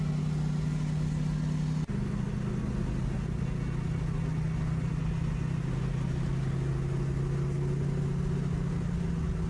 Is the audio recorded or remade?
recorded